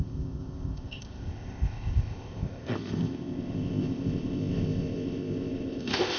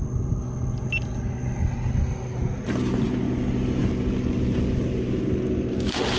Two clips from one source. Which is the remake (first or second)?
first